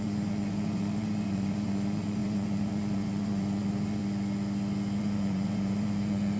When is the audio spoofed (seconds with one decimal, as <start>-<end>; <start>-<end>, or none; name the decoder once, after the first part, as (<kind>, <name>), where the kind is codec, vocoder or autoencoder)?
0.0-4.0 (vocoder, Vocos); 5.0-6.4